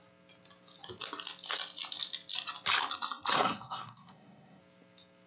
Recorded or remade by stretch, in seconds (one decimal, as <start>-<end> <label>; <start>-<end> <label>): 0.0-3.3 recorded; 3.3-4.6 remade; 4.6-5.3 recorded